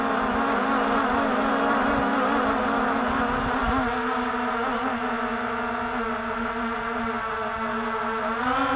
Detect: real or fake real